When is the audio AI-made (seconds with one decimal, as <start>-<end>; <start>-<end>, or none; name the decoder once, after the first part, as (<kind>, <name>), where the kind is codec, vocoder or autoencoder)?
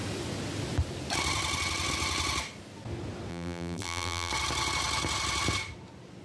3.3-4.3 (vocoder, BigVGAN v2)